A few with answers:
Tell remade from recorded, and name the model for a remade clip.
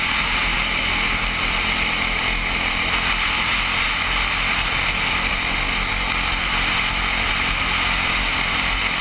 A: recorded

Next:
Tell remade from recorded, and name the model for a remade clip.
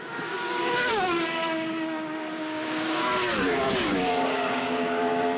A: remade, codec, DAC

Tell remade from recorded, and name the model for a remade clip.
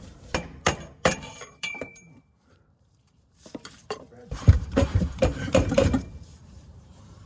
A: remade, vocoder, BigVGAN v2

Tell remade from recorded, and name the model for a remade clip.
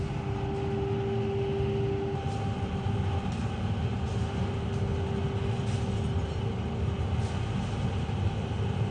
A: recorded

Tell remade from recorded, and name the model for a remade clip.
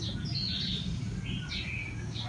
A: recorded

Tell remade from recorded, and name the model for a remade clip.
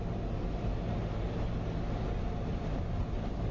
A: recorded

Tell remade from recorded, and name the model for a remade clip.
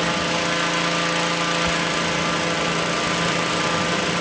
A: recorded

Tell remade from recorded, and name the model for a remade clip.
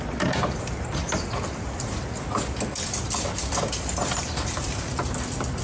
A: recorded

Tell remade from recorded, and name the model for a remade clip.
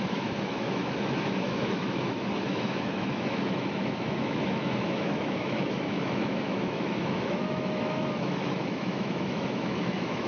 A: remade, autoencoder, DAC-VAE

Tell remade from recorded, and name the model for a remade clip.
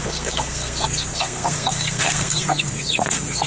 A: remade, codec, SNAC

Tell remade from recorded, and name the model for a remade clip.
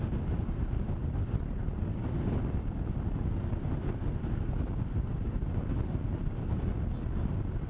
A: recorded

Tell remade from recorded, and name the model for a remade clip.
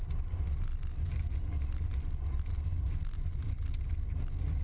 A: recorded